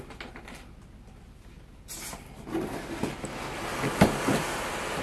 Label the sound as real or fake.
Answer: real